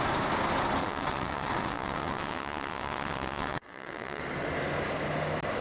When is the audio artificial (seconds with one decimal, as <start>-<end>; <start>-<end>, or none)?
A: 0.8-4.2